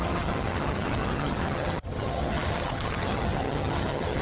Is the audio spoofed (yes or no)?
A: yes